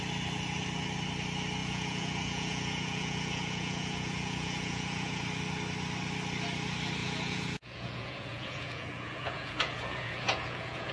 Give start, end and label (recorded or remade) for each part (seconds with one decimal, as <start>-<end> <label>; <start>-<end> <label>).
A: 0.0-1.6 recorded; 1.6-5.2 remade; 5.2-7.0 recorded; 7.0-10.9 remade